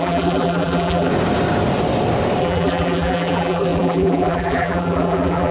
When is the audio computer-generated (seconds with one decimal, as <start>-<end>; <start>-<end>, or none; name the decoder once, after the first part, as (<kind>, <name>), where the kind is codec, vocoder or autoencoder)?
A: 0.0-1.1 (vocoder, BigVGAN v2); 2.4-5.5

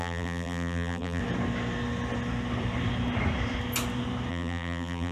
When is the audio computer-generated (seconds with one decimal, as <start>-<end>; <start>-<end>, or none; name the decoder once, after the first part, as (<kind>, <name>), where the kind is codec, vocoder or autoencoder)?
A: 0.0-1.2 (vocoder, BigVGAN v2); 4.3-5.1